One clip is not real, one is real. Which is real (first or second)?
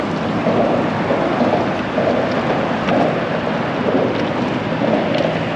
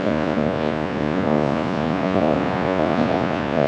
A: first